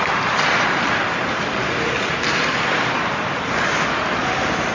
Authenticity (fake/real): real